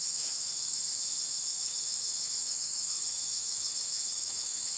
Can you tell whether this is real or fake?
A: fake